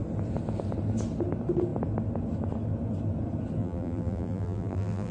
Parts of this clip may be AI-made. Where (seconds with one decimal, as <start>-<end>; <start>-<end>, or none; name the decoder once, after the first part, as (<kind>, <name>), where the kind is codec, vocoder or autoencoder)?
3.6-5.1 (vocoder, BigVGAN v2)